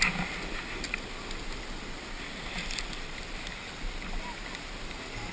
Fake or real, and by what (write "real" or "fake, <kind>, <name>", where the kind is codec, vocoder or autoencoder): real